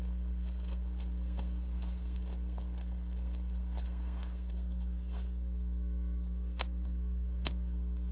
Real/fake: fake